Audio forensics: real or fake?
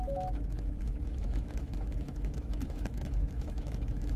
fake